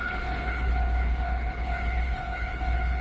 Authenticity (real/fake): fake